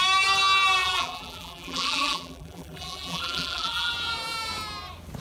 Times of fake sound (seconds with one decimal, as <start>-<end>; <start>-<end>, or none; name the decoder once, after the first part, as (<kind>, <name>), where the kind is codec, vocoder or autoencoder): 0.8-3.9 (vocoder, BigVGAN v2)